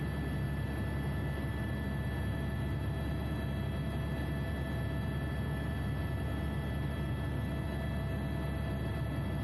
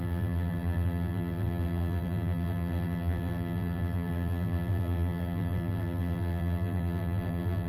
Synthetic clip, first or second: second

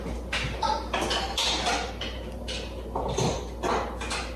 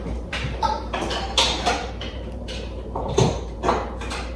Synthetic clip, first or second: second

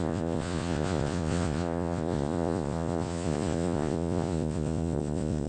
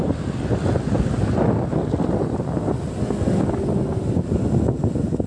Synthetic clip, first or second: first